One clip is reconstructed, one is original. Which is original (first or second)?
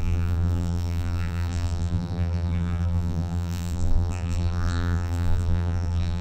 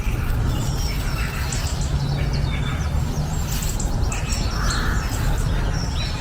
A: second